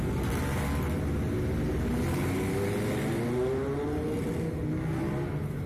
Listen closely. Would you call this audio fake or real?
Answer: real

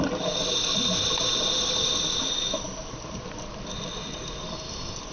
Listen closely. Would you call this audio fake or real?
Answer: real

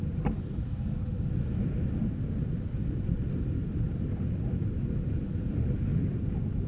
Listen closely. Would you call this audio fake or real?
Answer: real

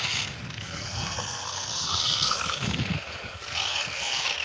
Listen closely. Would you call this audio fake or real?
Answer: fake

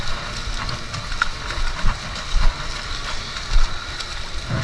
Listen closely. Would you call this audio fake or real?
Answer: real